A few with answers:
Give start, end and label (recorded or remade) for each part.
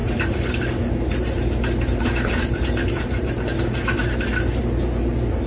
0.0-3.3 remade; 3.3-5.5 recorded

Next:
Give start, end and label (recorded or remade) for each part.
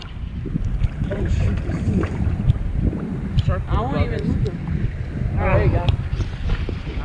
0.0-1.0 recorded; 1.0-3.4 remade; 3.4-7.0 recorded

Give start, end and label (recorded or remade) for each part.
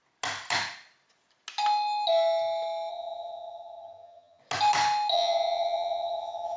0.0-2.9 recorded; 2.9-4.4 remade; 4.4-5.1 recorded; 5.1-6.6 remade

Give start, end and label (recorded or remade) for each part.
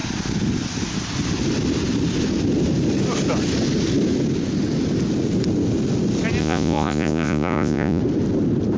0.0-6.4 recorded; 6.4-8.0 remade; 8.0-8.8 recorded